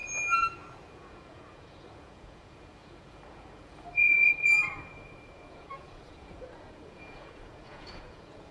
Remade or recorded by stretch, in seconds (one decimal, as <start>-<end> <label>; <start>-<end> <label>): 0.0-0.9 recorded; 0.9-8.5 remade